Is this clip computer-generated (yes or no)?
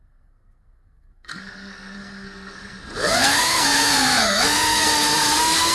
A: yes